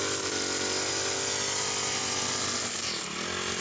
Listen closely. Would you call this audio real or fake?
real